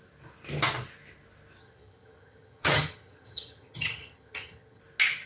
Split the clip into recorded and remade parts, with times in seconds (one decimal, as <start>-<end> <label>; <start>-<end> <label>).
0.0-1.6 recorded; 1.6-4.8 remade; 4.8-5.3 recorded